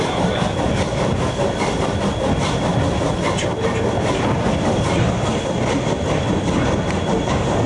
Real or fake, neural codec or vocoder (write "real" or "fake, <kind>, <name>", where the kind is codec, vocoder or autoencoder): real